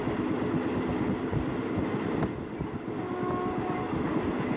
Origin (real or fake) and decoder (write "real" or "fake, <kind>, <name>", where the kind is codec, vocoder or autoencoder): real